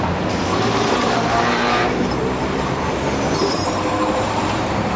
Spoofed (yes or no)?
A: yes